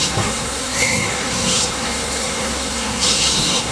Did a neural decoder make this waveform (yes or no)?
yes